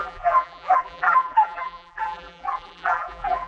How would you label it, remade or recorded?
remade